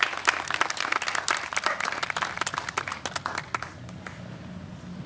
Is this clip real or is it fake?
real